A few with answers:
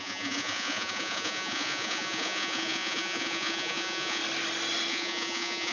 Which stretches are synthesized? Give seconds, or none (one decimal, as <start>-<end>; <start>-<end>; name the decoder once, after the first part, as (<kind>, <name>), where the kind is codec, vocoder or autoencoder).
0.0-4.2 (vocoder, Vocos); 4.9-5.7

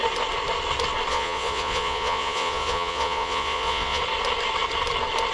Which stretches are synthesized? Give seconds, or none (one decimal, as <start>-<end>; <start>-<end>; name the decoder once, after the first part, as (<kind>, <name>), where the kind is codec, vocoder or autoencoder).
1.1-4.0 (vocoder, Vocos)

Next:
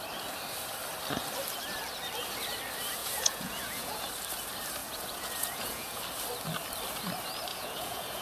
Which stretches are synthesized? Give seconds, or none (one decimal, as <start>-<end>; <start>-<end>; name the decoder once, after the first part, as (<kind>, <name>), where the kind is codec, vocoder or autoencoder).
3.0-4.1 (vocoder, Vocos); 4.8-6.0; 7.5-8.2

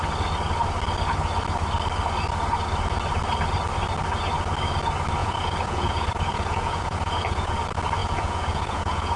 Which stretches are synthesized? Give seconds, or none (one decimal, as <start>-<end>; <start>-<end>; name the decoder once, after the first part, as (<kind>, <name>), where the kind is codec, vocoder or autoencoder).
5.2-7.5 (vocoder, Vocos); 8.0-9.2

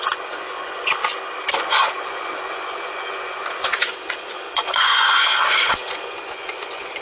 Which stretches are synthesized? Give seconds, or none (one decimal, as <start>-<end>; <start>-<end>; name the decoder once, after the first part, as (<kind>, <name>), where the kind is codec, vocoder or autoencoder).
0.0-1.0 (vocoder, Vocos); 1.6-7.0

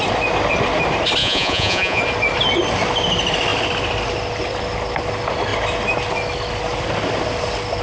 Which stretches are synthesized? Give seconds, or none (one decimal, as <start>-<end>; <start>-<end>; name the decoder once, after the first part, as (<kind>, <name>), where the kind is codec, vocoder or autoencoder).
1.2-2.0 (vocoder, Vocos)

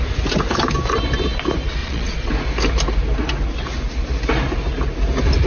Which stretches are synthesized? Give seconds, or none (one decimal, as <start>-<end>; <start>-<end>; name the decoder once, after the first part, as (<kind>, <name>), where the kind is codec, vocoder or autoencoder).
1.8-2.3 (vocoder, Vocos)